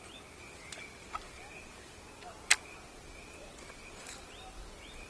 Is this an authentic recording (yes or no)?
yes